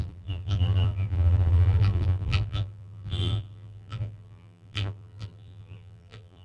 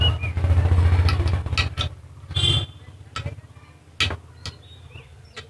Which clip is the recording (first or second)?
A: second